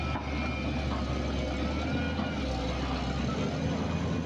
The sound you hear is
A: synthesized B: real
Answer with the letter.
B